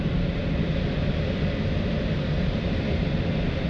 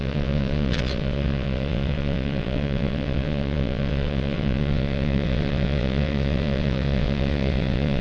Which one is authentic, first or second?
first